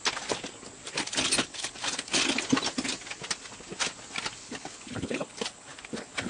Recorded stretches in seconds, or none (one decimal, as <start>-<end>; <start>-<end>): 0.0-1.5; 2.2-4.4